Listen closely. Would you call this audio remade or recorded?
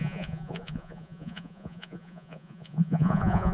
remade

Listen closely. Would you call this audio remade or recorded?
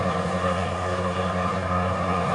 remade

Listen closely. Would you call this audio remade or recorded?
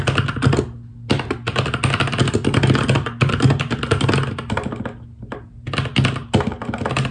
recorded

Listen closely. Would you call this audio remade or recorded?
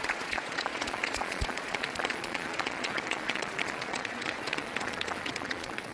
remade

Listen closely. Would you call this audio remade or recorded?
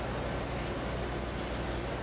recorded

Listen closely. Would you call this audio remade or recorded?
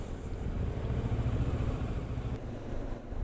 recorded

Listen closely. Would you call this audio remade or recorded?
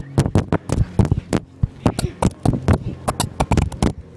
recorded